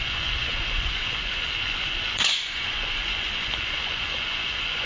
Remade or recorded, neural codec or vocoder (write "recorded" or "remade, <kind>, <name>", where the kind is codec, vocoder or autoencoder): remade, vocoder, Vocos